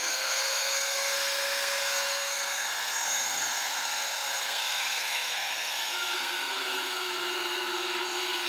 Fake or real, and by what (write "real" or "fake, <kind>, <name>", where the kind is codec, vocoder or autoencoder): fake, codec, SNAC